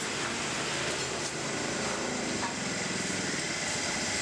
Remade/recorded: recorded